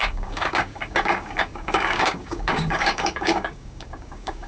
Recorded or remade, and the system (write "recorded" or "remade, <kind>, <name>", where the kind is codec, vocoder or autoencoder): remade, codec, DAC